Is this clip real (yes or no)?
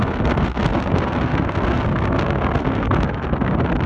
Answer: no